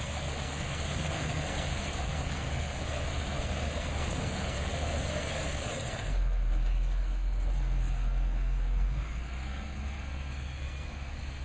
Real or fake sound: fake